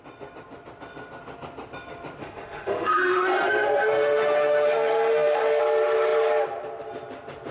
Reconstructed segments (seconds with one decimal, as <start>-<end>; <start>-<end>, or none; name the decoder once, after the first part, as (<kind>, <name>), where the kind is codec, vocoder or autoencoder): 2.2-5.6 (autoencoder, DAC-VAE)